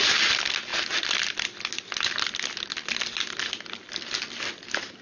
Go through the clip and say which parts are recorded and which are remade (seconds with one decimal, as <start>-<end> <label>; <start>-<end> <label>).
0.0-5.0 recorded